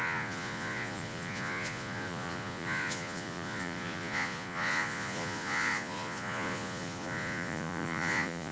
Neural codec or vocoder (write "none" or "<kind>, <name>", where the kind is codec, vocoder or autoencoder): vocoder, Vocos